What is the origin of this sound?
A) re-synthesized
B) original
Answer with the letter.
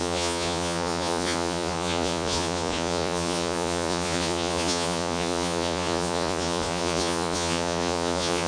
A